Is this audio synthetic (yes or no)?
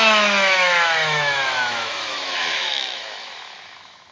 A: yes